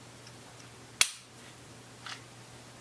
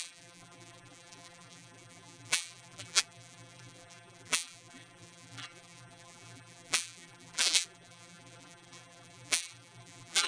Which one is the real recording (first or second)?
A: first